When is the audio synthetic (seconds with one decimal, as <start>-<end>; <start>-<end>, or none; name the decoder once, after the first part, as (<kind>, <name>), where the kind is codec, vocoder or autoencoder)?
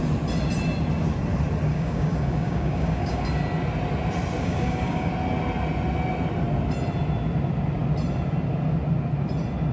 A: 1.7-3.2 (codec, DAC); 4.4-5.1